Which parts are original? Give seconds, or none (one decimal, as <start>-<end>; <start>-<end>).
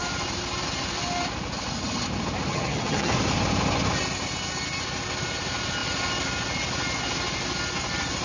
0.0-2.5; 3.1-8.2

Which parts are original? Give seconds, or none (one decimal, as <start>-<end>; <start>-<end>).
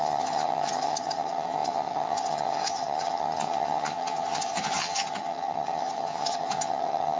none